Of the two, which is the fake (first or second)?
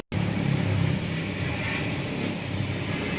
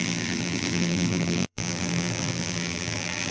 second